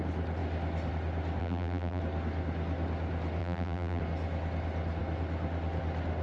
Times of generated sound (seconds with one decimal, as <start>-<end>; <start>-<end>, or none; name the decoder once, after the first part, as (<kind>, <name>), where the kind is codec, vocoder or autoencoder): 1.4-2.0 (vocoder, BigVGAN v2); 3.4-4.0